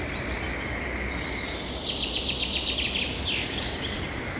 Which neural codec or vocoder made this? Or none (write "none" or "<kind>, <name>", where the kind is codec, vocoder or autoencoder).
none